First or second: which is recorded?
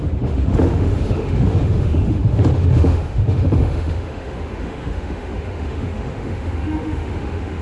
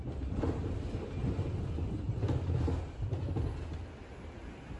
second